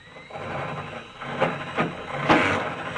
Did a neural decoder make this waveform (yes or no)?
no